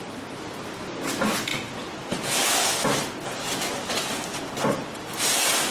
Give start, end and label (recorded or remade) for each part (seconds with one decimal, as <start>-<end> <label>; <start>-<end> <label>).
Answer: 0.0-5.7 recorded

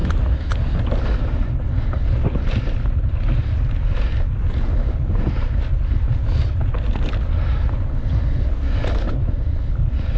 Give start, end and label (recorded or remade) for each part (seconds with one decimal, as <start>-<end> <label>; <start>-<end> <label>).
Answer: 0.0-10.2 recorded

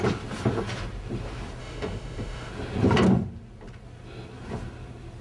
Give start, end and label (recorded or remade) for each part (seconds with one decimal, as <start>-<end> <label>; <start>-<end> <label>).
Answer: 0.0-1.6 recorded; 1.6-2.5 remade; 2.5-5.2 recorded

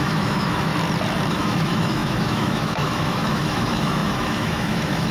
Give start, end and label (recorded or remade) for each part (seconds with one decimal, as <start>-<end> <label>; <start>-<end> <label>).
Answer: 0.0-0.7 remade; 0.7-1.3 recorded; 1.3-5.1 remade

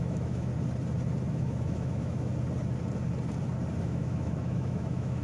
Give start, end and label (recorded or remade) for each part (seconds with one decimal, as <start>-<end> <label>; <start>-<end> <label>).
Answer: 0.0-0.5 remade; 0.5-1.3 recorded; 1.3-2.3 remade; 2.3-3.8 recorded; 3.8-5.2 remade

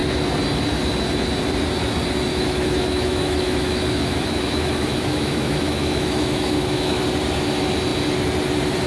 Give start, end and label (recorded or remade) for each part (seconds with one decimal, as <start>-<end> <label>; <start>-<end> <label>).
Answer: 0.0-2.3 recorded; 2.3-7.0 remade; 7.0-8.9 recorded

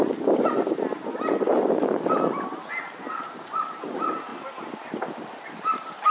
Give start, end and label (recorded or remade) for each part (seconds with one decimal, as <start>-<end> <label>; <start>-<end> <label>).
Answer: 0.0-6.1 recorded